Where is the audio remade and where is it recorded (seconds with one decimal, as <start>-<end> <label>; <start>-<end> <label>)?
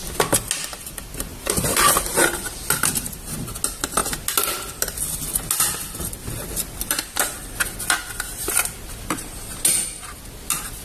0.0-10.8 recorded